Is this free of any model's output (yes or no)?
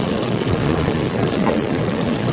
no